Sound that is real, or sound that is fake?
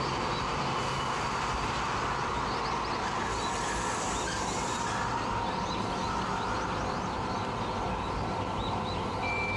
real